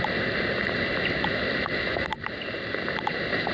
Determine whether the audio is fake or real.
real